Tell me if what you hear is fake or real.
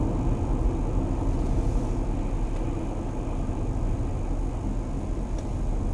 real